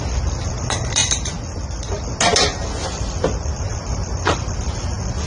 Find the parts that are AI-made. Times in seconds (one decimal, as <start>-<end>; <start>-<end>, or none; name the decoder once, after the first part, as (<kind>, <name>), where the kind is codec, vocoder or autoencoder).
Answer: none